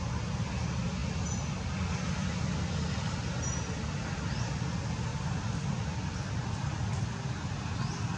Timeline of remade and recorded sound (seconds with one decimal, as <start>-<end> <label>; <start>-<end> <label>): 0.0-8.2 recorded